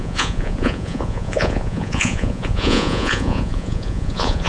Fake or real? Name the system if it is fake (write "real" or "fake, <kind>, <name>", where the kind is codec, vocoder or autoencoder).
fake, vocoder, Vocos